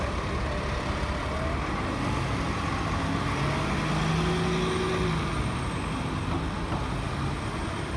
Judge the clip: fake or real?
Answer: real